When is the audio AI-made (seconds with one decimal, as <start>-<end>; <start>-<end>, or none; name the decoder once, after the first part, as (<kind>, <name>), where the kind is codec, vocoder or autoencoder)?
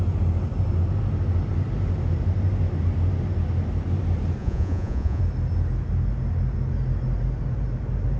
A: 4.4-5.2 (vocoder, Vocos)